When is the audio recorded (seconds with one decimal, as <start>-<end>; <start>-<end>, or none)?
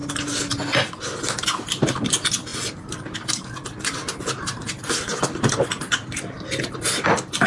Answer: 0.0-7.5